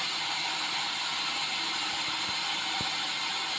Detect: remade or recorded recorded